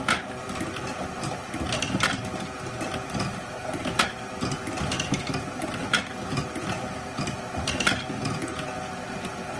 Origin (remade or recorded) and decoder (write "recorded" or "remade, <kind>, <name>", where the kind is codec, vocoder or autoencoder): remade, vocoder, BigVGAN v2